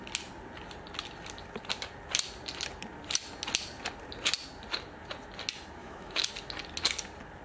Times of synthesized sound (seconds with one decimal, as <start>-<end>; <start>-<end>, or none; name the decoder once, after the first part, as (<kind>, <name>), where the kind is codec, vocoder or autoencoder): 5.8-6.3 (autoencoder, DAC-VAE)